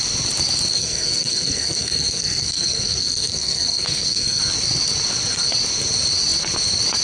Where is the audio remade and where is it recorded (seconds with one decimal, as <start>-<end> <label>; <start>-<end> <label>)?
0.0-0.7 recorded; 0.7-4.4 remade; 4.4-7.0 recorded